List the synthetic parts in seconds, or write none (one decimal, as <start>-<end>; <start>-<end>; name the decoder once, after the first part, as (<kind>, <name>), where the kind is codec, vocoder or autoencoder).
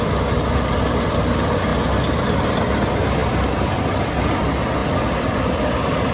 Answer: none